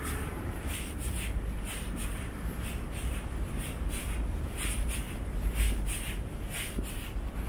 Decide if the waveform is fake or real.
fake